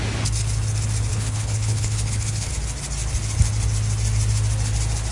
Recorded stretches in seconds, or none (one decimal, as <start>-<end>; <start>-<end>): 0.0-1.1; 2.5-5.1